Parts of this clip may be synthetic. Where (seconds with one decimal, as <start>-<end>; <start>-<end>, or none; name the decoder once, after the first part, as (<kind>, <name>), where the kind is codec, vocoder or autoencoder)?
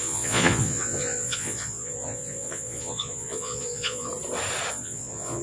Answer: 0.0-4.1 (vocoder, Vocos); 4.7-5.4